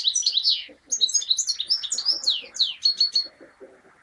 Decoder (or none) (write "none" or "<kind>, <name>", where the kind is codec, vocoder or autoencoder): none